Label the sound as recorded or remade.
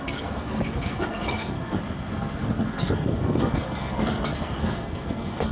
remade